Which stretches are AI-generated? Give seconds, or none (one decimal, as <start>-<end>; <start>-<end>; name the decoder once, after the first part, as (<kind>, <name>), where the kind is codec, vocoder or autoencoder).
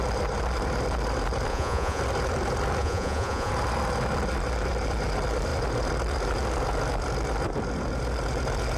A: 1.5-2.0 (vocoder, Vocos); 2.8-3.5